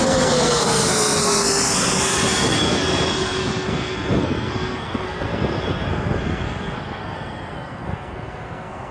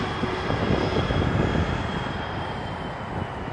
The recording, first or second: second